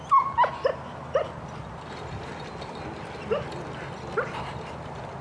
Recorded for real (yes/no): yes